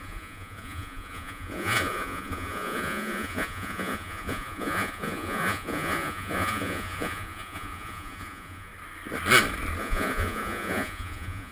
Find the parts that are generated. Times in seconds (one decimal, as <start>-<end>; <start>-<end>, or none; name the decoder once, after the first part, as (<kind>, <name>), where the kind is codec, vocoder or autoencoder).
0.0-8.7 (vocoder, Vocos); 9.8-11.5